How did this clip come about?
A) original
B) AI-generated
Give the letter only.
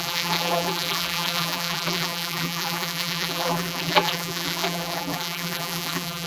B